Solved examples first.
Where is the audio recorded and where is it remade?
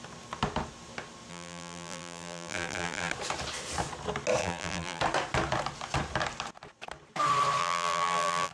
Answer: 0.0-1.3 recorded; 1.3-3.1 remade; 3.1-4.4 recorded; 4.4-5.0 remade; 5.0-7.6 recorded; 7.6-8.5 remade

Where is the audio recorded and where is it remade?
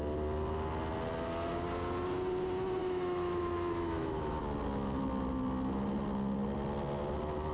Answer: 0.0-2.8 recorded; 2.8-4.4 remade; 4.4-7.5 recorded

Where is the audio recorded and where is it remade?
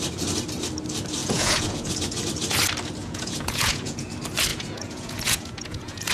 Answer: 0.0-1.2 recorded; 1.2-1.9 remade; 1.9-3.0 recorded; 3.0-4.1 remade; 4.1-4.5 recorded; 4.5-6.1 remade